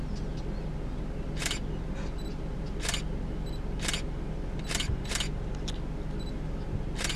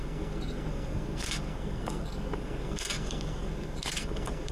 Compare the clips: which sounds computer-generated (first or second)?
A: second